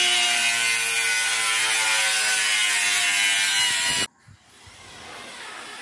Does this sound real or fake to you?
real